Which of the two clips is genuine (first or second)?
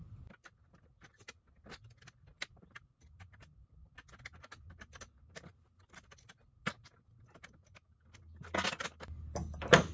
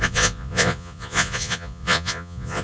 first